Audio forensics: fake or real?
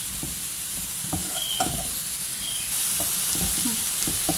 real